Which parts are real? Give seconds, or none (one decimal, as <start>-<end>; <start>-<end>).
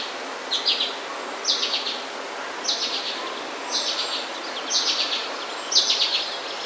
0.0-6.7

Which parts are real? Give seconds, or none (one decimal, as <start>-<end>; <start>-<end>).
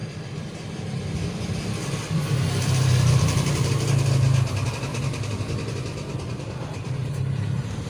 3.7-4.9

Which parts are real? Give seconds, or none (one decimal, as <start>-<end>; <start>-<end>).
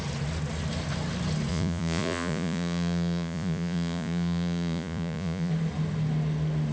0.0-1.5; 5.5-6.7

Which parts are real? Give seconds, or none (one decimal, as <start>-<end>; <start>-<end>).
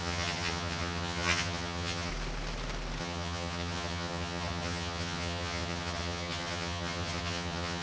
2.1-3.0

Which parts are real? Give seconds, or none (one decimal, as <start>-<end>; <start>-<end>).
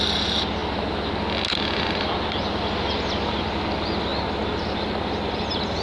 0.0-5.8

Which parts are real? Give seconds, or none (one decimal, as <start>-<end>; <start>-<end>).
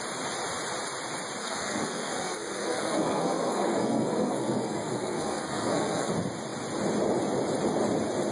0.0-1.4; 6.1-8.3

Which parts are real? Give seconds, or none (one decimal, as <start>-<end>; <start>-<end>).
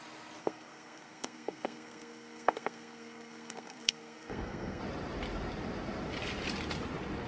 0.0-0.4; 4.8-7.3